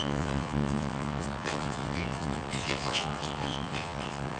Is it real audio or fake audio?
fake